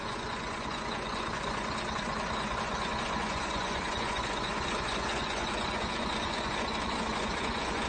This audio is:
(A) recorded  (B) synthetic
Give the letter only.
B